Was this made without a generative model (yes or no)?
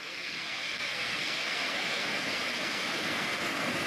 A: no